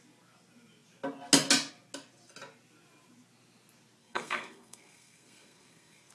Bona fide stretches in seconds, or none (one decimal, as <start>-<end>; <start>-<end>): 0.0-4.0